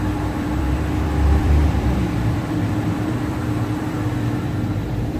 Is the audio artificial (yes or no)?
yes